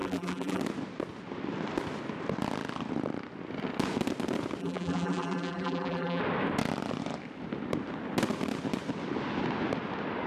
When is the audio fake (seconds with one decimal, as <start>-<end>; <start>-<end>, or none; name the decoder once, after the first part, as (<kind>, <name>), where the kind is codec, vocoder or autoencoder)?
0.0-0.6 (vocoder, BigVGAN v2); 4.6-6.2